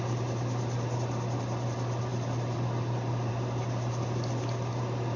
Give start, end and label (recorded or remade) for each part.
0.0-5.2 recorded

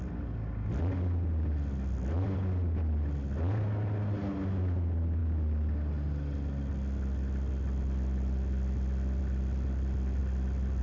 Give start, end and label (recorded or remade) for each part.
0.0-10.8 recorded